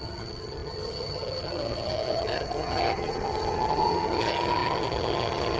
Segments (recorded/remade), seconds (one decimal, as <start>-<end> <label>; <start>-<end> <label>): 0.0-5.6 remade